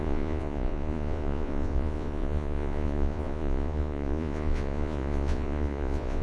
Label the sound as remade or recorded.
remade